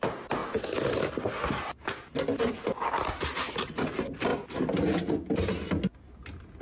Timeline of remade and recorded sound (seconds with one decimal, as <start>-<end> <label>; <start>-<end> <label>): 0.0-6.6 recorded